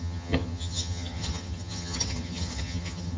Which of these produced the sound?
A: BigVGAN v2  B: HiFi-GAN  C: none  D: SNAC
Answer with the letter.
B